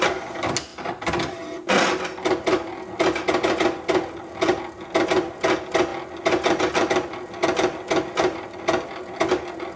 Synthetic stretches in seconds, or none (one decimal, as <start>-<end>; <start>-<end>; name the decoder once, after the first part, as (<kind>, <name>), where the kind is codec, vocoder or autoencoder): none